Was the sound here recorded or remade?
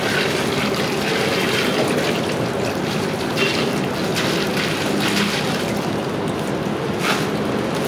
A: recorded